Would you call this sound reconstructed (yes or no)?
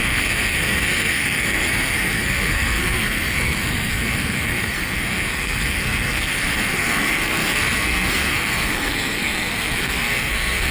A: yes